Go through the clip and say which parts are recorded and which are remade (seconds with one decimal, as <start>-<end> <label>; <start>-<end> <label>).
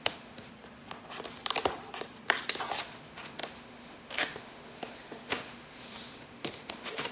0.0-0.5 remade; 0.5-2.8 recorded; 2.8-7.1 remade